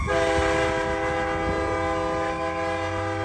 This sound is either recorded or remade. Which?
recorded